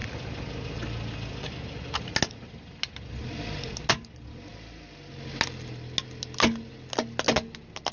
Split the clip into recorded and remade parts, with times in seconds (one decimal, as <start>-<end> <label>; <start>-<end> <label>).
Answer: 0.0-7.9 recorded